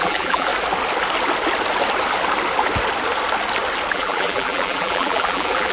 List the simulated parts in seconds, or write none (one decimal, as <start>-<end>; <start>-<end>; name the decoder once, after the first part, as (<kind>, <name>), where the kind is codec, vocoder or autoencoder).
0.0-0.5 (vocoder, BigVGAN v2); 3.9-5.7